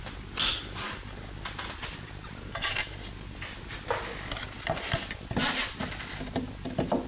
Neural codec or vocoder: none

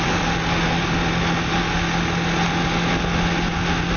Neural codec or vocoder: none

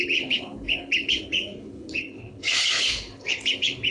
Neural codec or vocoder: codec, HILCodec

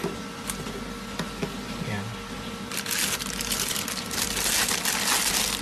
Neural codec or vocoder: none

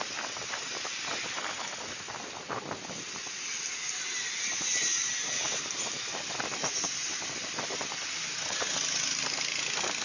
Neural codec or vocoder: none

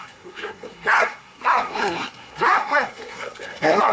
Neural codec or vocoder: codec, SNAC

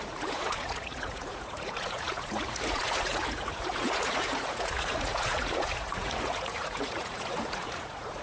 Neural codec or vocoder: vocoder, Vocos